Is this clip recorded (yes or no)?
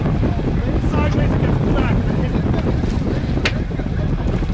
yes